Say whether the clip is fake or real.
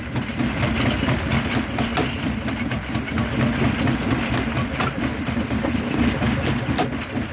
real